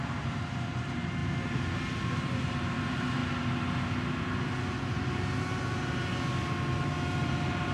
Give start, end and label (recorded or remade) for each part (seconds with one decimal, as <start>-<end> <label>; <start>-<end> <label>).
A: 0.0-3.2 remade; 3.2-6.9 recorded; 6.9-7.7 remade